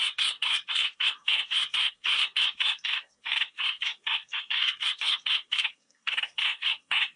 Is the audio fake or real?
fake